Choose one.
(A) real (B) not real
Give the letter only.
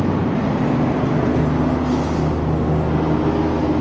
A